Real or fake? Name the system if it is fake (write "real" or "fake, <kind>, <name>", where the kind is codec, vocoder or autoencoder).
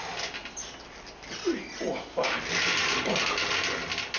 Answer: real